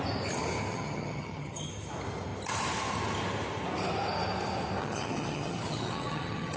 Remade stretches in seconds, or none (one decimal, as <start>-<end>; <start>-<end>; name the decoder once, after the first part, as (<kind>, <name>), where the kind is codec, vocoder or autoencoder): 0.7-1.7 (vocoder, HiFi-GAN); 4.8-6.6